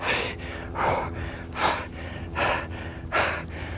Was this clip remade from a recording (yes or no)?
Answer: yes